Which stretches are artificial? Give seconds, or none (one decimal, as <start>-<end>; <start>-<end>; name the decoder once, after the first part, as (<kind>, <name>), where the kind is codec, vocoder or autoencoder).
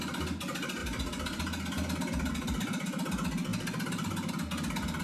none